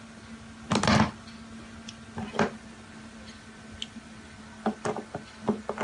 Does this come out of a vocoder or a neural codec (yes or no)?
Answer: no